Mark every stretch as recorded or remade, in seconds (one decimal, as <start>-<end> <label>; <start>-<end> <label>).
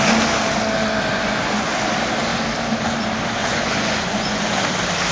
0.0-1.1 recorded; 1.1-1.7 remade; 1.7-3.4 recorded; 3.4-4.6 remade; 4.6-5.1 recorded